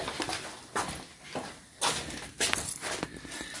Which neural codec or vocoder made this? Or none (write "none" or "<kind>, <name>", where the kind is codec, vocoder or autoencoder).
none